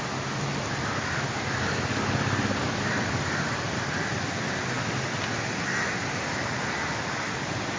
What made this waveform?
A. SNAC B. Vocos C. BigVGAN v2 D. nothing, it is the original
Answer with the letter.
D